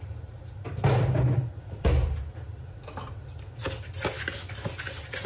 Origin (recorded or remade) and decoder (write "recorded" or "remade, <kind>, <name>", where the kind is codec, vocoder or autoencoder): recorded